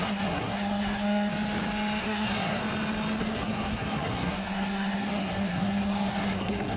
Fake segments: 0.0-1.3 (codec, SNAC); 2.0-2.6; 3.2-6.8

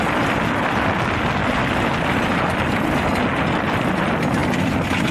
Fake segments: none

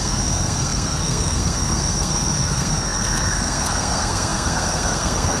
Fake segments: 0.0-5.4 (codec, SNAC)

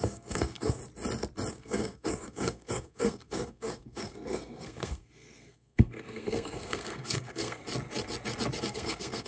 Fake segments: 0.0-0.8 (codec, SNAC); 1.5-7.6; 8.6-9.3

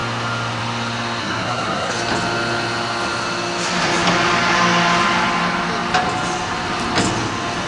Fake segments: 1.2-1.9 (codec, SNAC)

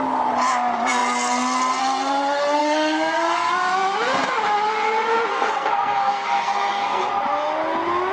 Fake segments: 2.6-3.5 (codec, SNAC); 5.3-7.1

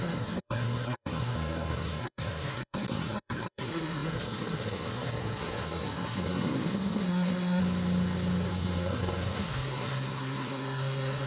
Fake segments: 0.0-7.6 (codec, SNAC); 8.5-11.3